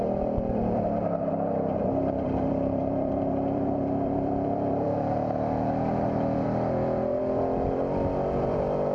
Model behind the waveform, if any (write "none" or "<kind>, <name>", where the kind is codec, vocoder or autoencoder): vocoder, BigVGAN v2